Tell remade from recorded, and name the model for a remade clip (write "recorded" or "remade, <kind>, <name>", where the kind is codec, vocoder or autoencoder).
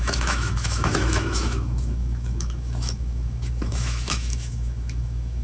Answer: remade, autoencoder, DAC-VAE